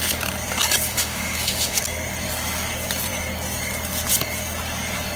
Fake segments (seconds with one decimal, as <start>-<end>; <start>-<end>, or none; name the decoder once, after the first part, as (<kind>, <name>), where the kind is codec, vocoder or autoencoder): 0.9-1.8 (autoencoder, DAC-VAE)